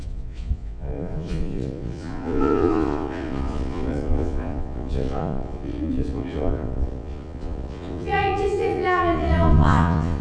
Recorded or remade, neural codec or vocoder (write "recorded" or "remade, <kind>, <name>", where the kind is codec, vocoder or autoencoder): remade, vocoder, Vocos